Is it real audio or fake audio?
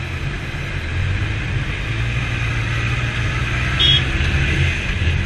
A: real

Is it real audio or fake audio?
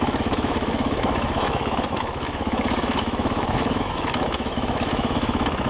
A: fake